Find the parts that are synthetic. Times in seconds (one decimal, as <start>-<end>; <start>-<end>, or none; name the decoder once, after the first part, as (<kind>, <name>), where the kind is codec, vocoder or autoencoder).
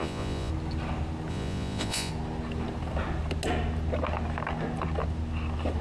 0.0-0.5 (vocoder, Vocos); 1.3-2.1